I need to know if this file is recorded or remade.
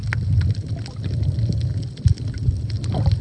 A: recorded